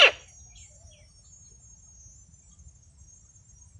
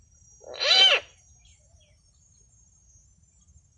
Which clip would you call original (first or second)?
first